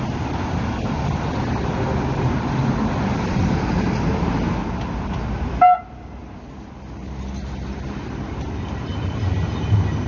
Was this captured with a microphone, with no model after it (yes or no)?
yes